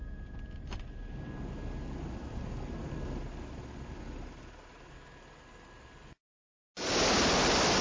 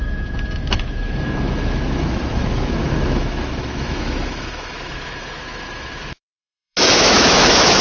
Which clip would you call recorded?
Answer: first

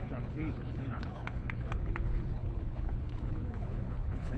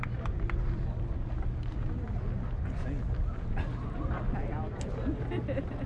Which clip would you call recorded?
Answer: second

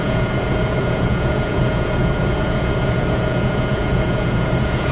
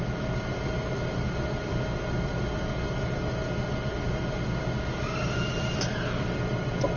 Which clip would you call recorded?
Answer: second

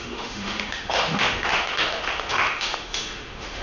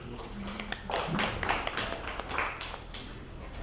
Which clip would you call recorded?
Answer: second